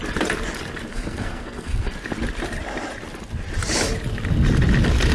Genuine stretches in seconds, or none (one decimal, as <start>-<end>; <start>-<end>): 0.0-0.9; 1.9-5.1